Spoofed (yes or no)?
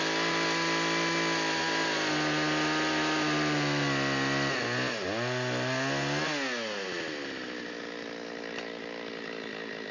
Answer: no